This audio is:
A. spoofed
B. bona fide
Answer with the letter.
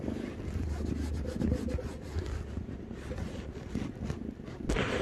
B